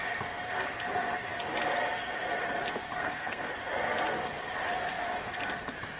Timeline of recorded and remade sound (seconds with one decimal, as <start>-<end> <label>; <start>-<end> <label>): 0.0-3.0 recorded; 3.0-3.5 remade; 3.5-6.0 recorded